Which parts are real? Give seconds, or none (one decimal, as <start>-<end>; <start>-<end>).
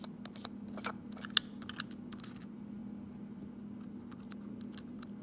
0.0-5.2